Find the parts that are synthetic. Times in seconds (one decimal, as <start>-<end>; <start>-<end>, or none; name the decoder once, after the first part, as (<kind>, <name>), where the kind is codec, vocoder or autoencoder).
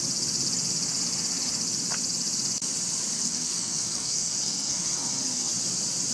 3.2-5.5 (codec, SNAC)